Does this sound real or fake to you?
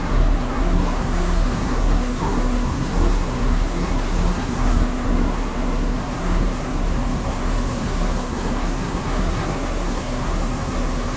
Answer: fake